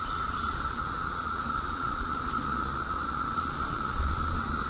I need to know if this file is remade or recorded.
remade